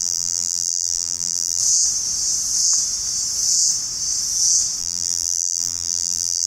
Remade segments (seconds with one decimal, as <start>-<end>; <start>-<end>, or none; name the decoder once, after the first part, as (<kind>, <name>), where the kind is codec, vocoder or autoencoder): 0.0-1.6 (vocoder, BigVGAN v2); 4.8-6.5